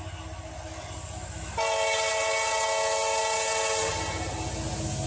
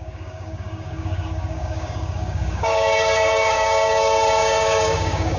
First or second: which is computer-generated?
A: second